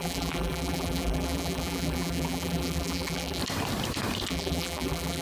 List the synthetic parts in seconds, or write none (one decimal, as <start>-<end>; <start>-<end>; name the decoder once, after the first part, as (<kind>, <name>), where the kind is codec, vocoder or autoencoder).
0.0-3.4 (vocoder, BigVGAN v2); 4.3-5.2